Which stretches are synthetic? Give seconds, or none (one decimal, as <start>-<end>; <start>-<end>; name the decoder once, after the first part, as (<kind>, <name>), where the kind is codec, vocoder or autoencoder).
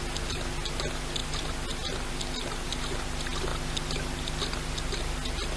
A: none